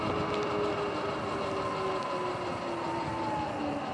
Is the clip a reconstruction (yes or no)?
no